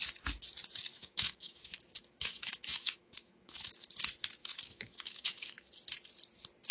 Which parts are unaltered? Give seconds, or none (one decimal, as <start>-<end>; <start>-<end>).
0.0-0.9; 3.9-4.4; 5.7-6.7